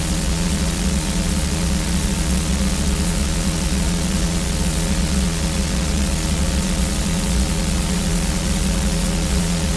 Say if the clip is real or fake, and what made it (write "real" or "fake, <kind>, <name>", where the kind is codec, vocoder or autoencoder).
fake, vocoder, Vocos